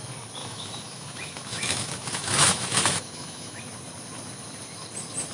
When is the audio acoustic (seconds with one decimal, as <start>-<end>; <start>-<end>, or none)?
0.0-0.4; 3.6-5.3